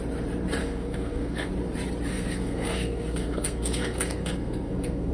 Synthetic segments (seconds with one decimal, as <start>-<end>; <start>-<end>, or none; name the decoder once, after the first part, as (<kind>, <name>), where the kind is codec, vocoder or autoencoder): 0.6-1.5 (codec, SNAC); 2.1-5.1